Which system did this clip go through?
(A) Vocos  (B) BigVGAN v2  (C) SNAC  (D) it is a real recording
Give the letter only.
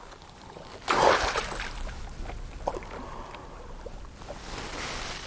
D